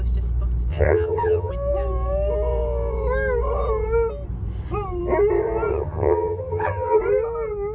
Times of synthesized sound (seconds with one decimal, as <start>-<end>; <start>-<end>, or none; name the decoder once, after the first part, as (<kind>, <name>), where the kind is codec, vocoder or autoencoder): 0.7-1.5 (vocoder, HiFi-GAN); 5.7-7.0

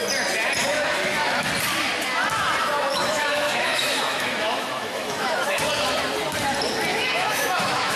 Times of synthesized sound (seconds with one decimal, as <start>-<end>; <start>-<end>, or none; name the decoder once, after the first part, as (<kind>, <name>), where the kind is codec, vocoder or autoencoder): 0.7-1.5 (autoencoder, DAC-VAE); 2.9-5.6; 6.9-8.0

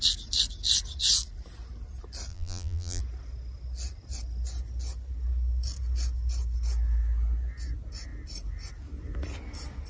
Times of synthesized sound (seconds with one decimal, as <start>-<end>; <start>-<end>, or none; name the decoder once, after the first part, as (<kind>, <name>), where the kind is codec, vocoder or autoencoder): 2.3-3.0 (vocoder, BigVGAN v2)

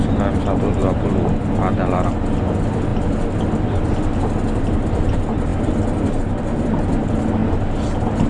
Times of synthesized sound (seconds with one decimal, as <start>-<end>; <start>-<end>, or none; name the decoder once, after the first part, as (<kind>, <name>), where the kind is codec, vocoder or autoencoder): none

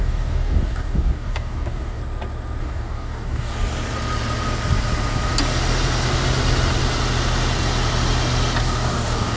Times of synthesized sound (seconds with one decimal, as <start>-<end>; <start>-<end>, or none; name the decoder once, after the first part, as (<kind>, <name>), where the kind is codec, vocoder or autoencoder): 0.0-2.0 (codec, DAC); 2.6-3.5; 8.6-9.4

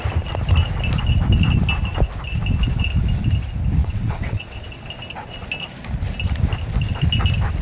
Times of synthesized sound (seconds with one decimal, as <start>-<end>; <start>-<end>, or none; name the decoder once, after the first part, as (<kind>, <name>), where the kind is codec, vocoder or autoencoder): 3.8-4.9 (vocoder, WaveNeXt)